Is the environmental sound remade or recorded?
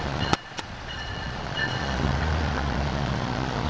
remade